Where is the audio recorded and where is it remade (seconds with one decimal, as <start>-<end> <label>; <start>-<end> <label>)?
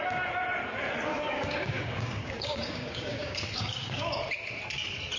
0.0-1.1 recorded; 1.1-4.2 remade; 4.2-5.2 recorded